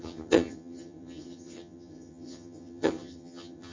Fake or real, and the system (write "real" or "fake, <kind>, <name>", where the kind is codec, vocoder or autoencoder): fake, vocoder, HiFi-GAN